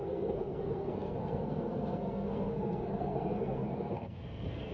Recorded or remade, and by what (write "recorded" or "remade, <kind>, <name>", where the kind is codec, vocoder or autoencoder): remade, codec, SNAC